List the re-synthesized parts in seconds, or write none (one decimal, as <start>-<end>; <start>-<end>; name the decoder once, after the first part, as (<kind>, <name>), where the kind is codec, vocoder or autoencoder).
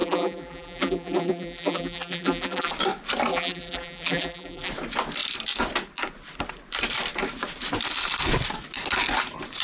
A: 0.0-2.7 (vocoder, BigVGAN v2); 3.3-4.7